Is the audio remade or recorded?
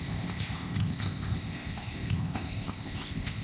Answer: remade